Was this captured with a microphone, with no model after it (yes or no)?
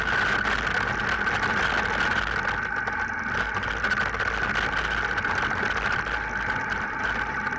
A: yes